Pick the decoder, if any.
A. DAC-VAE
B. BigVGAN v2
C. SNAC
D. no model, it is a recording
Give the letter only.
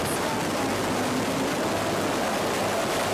D